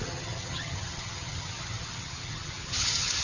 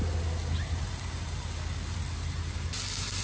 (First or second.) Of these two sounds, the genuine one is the second